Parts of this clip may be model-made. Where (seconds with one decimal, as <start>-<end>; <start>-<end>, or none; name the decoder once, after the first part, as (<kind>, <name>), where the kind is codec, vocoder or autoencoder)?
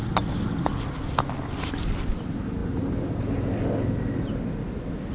none